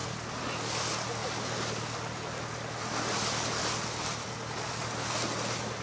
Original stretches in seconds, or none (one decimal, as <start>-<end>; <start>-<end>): 0.0-5.8